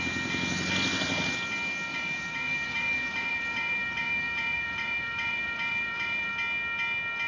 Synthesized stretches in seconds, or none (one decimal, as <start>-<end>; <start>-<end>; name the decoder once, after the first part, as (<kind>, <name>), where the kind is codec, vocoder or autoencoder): 1.9-6.3 (vocoder, BigVGAN v2)